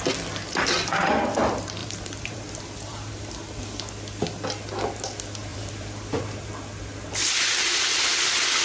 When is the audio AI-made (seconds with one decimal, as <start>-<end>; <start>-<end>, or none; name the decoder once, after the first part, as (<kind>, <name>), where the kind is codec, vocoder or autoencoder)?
1.8-3.1 (vocoder, BigVGAN v2); 5.5-6.2